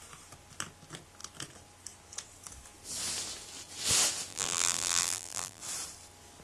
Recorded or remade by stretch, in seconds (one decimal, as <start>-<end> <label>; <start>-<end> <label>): 0.0-4.3 recorded; 4.3-5.6 remade; 5.6-6.4 recorded